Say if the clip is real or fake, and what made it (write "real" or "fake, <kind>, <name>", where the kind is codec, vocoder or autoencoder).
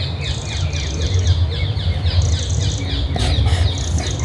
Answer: real